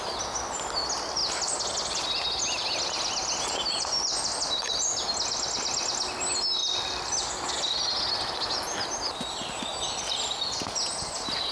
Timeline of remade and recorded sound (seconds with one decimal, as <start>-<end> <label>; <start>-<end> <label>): 0.0-11.5 recorded